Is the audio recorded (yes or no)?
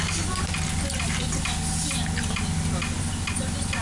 yes